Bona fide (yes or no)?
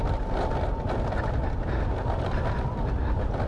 yes